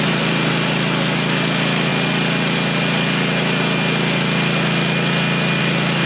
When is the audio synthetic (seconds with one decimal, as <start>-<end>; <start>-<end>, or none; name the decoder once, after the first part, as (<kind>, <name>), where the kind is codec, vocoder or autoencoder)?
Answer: none

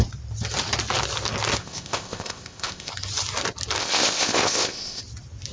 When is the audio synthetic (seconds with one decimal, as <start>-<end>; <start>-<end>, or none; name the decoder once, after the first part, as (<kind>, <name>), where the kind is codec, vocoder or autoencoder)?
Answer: 1.6-2.9 (codec, ZipCodec); 3.8-5.0

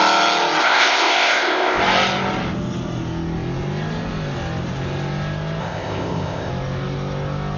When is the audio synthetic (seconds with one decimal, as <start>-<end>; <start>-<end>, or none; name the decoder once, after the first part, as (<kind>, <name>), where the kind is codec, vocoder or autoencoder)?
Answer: 0.6-1.8 (codec, ZipCodec); 5.6-6.5

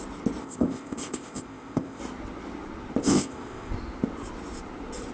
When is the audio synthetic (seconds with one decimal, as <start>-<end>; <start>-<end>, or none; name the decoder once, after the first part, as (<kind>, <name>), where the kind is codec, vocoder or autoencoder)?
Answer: 0.4-2.0 (codec, ZipCodec); 3.0-3.7

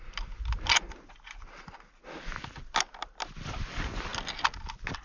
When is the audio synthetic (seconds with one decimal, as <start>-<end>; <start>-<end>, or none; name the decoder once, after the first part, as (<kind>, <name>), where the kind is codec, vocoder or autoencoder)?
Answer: none

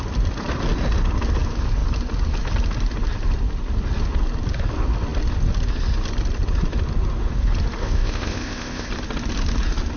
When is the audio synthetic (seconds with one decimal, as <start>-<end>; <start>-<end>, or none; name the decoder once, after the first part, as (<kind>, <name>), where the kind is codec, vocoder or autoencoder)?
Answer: 7.8-8.9 (codec, ZipCodec)